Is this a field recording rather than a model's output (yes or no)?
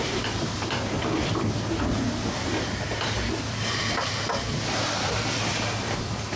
no